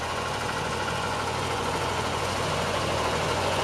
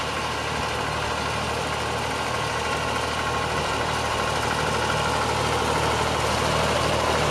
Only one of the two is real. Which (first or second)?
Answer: second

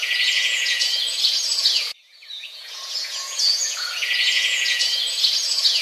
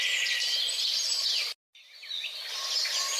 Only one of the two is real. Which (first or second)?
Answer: second